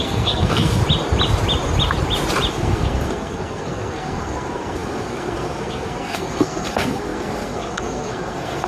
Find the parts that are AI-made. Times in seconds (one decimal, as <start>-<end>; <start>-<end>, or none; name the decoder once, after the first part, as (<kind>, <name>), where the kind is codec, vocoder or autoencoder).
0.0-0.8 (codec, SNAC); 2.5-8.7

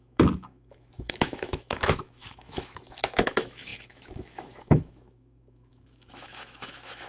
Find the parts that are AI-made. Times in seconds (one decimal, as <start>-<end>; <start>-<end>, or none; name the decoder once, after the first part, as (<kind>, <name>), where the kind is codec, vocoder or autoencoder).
0.0-7.1 (autoencoder, DAC-VAE)

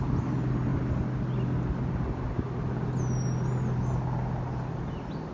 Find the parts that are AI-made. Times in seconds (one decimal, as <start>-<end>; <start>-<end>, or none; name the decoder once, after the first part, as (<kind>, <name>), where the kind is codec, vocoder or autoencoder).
none

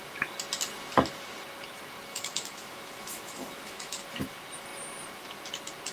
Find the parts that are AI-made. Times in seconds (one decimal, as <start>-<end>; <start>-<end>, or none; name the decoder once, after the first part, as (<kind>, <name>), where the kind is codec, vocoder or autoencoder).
2.1-4.0 (autoencoder, DAC-VAE)

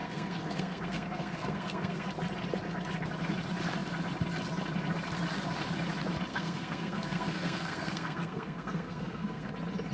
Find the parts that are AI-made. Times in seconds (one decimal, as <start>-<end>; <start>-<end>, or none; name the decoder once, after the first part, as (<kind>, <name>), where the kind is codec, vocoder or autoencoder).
0.0-2.1 (codec, SNAC); 6.3-9.5